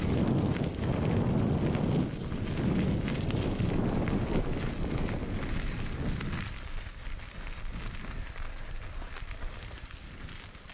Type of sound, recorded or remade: recorded